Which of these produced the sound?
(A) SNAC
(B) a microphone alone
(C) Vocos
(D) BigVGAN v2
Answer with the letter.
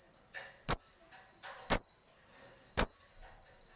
B